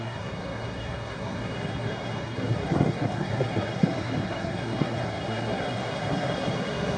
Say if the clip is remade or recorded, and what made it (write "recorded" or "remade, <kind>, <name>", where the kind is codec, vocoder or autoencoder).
remade, codec, SNAC